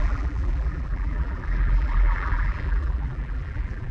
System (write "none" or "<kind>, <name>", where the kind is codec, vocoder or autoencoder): vocoder, BigVGAN v2